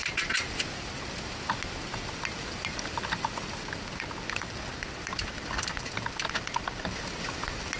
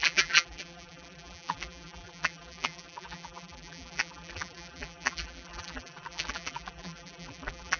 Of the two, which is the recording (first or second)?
first